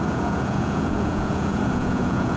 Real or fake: fake